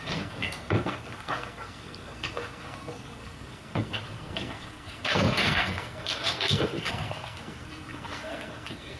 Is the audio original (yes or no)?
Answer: no